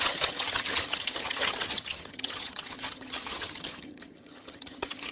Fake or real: fake